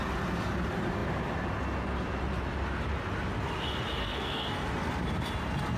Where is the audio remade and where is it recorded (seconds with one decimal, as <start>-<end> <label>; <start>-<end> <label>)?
0.0-4.0 recorded; 4.0-4.5 remade; 4.5-5.8 recorded